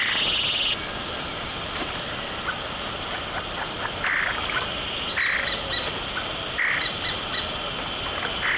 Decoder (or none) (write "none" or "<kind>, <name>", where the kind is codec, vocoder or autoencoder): none